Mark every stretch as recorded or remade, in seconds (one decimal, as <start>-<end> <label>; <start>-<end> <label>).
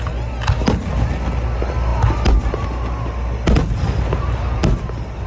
0.0-5.3 recorded